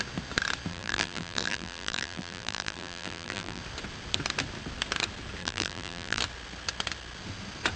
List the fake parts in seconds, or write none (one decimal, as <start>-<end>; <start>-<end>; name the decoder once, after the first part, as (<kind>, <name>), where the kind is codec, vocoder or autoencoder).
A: 0.7-3.6 (vocoder, BigVGAN v2); 5.4-6.2